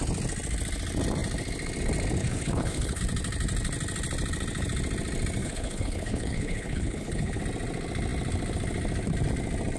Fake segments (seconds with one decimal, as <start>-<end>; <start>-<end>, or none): 2.2-3.0; 5.4-7.4